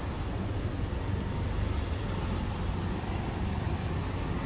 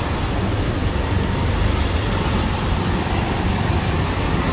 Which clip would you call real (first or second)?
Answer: first